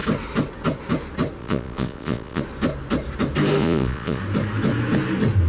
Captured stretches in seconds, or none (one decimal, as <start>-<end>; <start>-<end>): 0.0-1.4; 2.4-3.6; 4.2-5.5